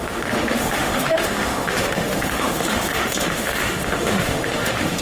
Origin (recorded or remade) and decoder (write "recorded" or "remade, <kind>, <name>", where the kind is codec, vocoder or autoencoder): remade, autoencoder, DAC-VAE